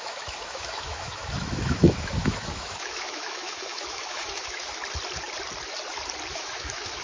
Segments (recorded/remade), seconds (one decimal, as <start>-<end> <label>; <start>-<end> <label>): 0.0-4.8 remade; 4.8-6.3 recorded; 6.3-7.0 remade

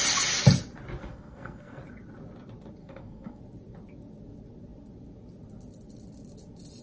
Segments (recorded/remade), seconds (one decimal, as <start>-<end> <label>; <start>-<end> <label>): 0.0-1.0 recorded; 1.0-1.8 remade; 1.8-2.8 recorded; 2.8-3.4 remade; 3.4-6.8 recorded

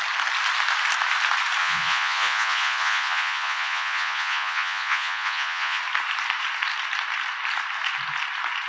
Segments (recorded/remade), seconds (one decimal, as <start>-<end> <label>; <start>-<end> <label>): 0.0-1.6 recorded; 1.6-5.8 remade; 5.8-8.7 recorded

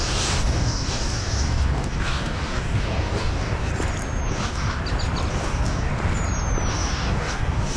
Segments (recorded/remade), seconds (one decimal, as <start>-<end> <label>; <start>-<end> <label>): 0.0-3.7 remade; 3.7-4.3 recorded; 4.3-4.8 remade; 4.8-5.3 recorded; 5.3-5.9 remade; 5.9-6.7 recorded; 6.7-7.8 remade

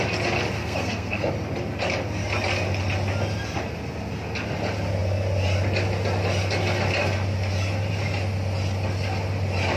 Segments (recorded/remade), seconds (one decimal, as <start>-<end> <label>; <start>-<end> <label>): 0.0-0.6 recorded; 0.6-1.3 remade; 1.3-9.8 recorded

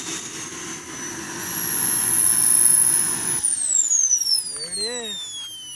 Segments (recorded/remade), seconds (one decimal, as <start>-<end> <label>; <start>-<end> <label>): 0.0-1.4 recorded; 1.4-4.4 remade; 4.4-5.7 recorded